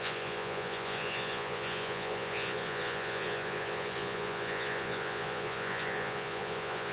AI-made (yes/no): yes